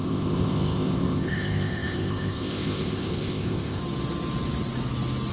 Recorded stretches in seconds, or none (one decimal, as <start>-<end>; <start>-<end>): 3.8-5.3